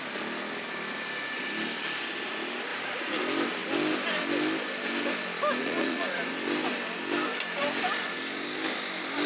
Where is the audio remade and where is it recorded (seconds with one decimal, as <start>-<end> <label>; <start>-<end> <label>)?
0.0-2.7 recorded; 2.7-3.2 remade; 3.2-5.6 recorded; 5.6-6.2 remade; 6.2-9.3 recorded